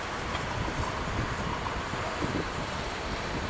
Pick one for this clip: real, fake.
fake